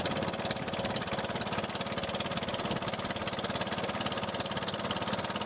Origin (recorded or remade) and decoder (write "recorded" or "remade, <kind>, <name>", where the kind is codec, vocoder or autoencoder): recorded